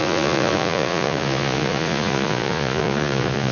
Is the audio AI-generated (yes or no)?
yes